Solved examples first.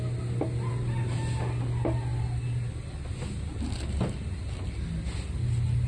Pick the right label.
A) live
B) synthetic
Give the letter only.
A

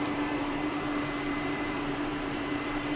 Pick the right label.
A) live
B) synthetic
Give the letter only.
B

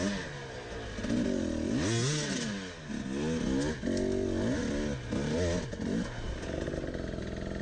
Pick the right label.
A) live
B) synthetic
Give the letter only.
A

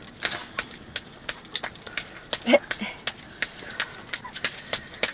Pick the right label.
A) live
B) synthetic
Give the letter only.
A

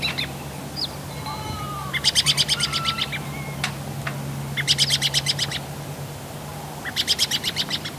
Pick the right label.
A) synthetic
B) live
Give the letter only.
B